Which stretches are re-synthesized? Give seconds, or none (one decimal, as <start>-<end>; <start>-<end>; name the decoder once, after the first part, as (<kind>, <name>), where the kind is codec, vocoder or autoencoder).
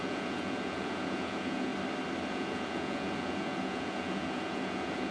0.0-1.7 (vocoder, Vocos); 2.3-5.1